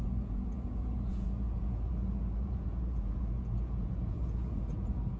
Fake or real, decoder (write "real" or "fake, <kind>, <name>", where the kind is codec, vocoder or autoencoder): fake, vocoder, Vocos